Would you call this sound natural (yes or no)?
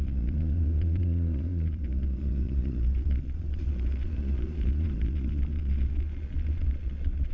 no